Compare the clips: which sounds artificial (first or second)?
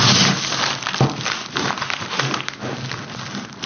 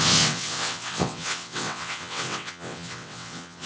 second